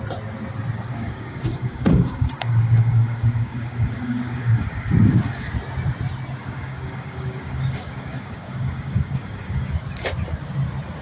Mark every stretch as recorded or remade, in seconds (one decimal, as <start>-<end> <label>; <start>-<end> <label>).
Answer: 0.0-0.9 recorded; 0.9-5.5 remade; 5.5-6.4 recorded; 6.4-9.7 remade; 9.7-11.0 recorded